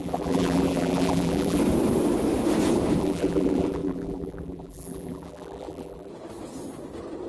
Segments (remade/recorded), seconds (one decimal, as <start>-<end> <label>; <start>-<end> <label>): 0.0-1.6 remade; 1.6-3.0 recorded; 3.0-6.1 remade; 6.1-7.3 recorded